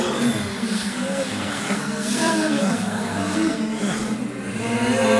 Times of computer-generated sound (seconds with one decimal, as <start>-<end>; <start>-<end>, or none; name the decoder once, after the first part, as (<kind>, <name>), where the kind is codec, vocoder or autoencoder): 0.5-3.6 (codec, SNAC)